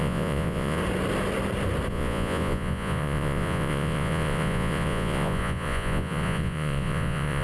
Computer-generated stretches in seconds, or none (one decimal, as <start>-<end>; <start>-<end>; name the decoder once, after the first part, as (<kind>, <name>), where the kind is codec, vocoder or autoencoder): 0.0-0.8 (vocoder, Vocos); 1.9-7.4